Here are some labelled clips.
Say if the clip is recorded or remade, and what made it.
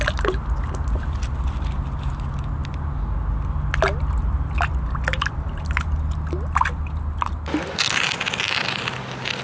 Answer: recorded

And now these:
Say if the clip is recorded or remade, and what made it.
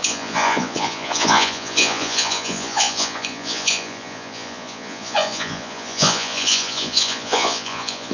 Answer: remade, vocoder, Vocos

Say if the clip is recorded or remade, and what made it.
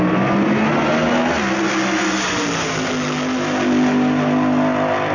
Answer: recorded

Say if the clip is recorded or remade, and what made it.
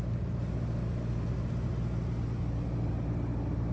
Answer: recorded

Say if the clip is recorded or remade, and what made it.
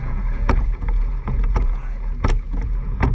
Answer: remade, vocoder, Vocos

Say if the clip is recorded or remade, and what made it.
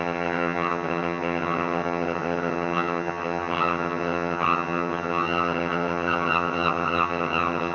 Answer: remade, vocoder, HiFi-GAN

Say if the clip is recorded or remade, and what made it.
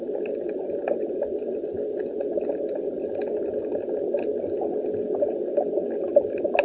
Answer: recorded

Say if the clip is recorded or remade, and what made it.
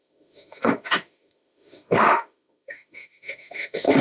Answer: remade, autoencoder, DAC-VAE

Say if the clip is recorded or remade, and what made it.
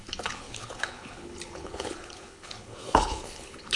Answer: remade, codec, HILCodec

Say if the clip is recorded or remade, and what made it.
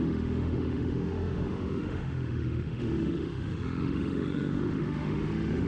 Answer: remade, autoencoder, DAC-VAE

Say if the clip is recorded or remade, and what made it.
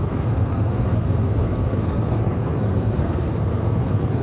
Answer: remade, codec, SNAC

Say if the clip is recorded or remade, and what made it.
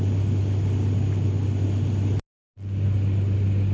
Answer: recorded